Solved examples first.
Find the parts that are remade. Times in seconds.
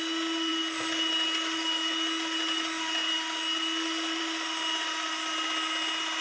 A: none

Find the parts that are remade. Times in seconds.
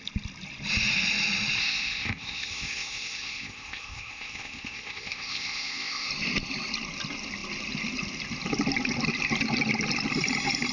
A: 1.6-6.1 (codec, ZipCodec)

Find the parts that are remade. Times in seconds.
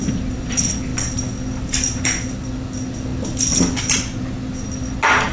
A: none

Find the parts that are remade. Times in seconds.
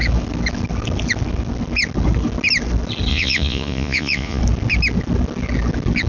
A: 3.1-4.4 (vocoder, Vocos)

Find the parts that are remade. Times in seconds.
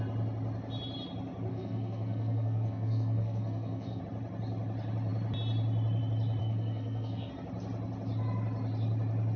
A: 1.5-4.0 (codec, SNAC); 6.4-7.3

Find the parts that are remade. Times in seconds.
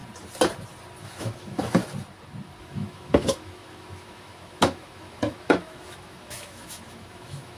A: 1.0-1.8 (autoencoder, DAC-VAE); 2.6-7.6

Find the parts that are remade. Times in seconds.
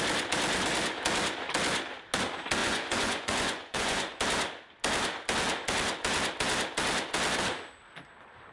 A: 2.6-4.2 (vocoder, Vocos)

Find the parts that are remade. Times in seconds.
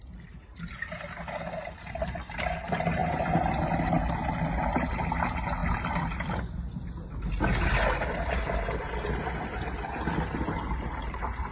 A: none